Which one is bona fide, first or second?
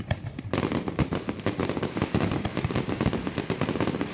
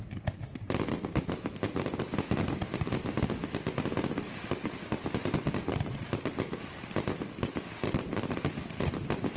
second